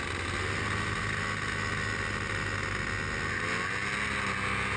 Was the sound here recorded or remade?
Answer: recorded